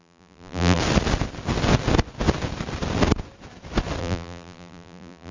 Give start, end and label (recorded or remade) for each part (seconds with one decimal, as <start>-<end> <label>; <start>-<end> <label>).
0.0-0.8 remade; 0.8-4.0 recorded; 4.0-5.3 remade